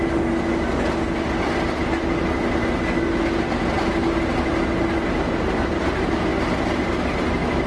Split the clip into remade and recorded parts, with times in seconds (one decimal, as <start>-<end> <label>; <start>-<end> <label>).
0.0-7.7 recorded